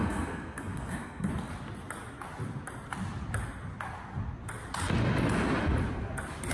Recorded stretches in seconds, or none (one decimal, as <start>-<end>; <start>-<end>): 1.3-6.5